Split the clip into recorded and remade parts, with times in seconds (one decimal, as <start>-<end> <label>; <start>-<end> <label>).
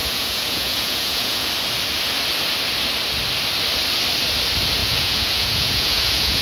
0.0-1.5 remade; 1.5-4.8 recorded; 4.8-6.4 remade